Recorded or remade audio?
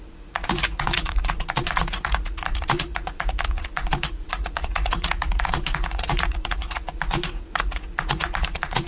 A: remade